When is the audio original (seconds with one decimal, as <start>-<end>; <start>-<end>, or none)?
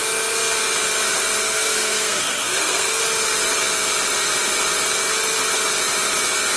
0.0-1.4; 3.0-6.6